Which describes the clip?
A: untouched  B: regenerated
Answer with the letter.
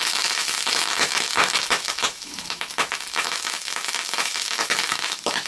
B